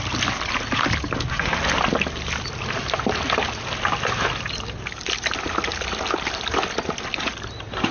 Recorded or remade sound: recorded